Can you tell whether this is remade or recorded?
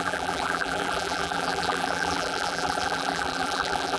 remade